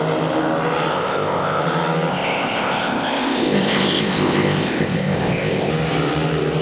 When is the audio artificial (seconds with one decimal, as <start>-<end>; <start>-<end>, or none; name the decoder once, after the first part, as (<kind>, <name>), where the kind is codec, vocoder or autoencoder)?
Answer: 0.9-1.6 (codec, ZipCodec); 2.1-5.7